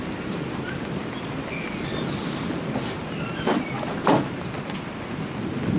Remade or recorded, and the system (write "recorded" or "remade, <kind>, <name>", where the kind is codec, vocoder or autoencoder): recorded